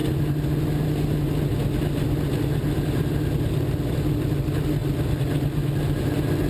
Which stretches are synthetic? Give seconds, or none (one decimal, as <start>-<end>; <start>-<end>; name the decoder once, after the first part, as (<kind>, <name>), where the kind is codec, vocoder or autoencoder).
none